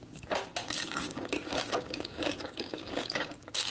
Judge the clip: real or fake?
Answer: fake